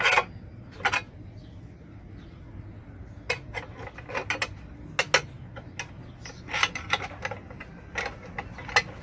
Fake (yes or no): no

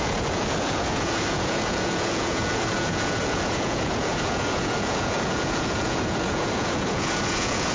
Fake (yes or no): yes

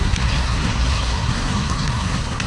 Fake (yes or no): yes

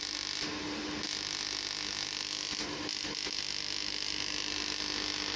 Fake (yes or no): no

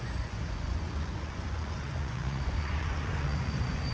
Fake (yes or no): yes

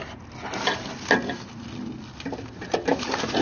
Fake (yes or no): no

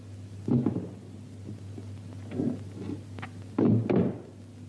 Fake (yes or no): no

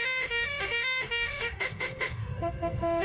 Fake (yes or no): yes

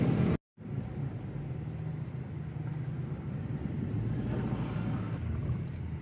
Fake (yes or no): no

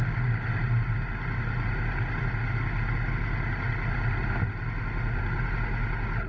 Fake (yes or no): no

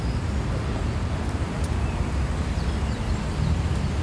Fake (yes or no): no